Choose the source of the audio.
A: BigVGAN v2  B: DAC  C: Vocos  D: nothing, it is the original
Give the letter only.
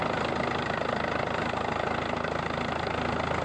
D